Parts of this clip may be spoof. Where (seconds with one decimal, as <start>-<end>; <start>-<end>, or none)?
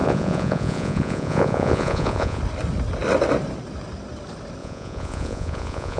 0.0-2.4; 4.6-6.0